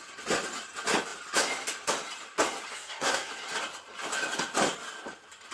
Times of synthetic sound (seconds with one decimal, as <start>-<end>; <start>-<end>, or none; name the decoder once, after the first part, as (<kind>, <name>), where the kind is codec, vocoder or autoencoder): 2.7-3.3 (codec, SNAC)